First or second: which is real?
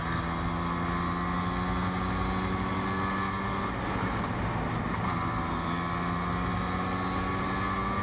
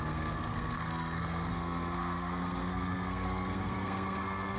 first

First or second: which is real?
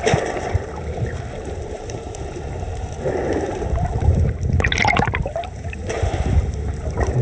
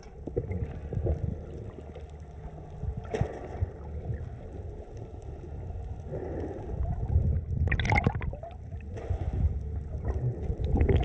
second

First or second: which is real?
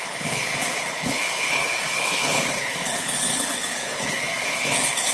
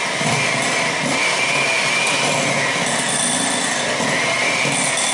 second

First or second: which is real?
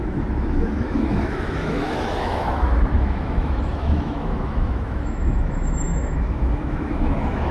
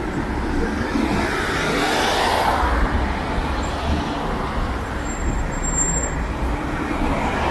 second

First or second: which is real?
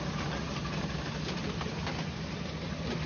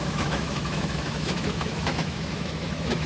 first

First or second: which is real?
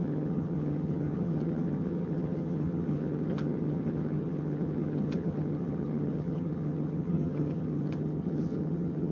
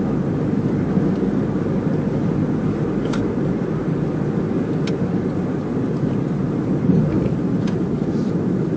second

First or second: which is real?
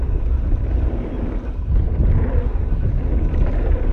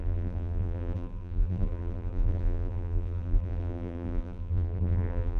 first